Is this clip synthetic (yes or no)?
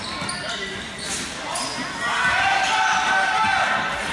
no